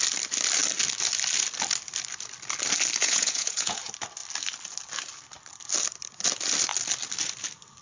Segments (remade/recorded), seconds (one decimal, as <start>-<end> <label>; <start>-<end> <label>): 0.0-3.0 recorded; 3.0-3.8 remade; 3.8-7.8 recorded